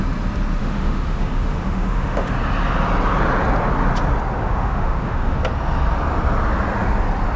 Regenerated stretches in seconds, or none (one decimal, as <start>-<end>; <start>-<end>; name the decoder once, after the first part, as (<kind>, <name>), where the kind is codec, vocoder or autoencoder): 0.6-2.3 (autoencoder, DAC-VAE); 4.4-5.4